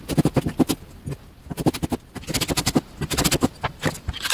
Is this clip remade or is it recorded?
recorded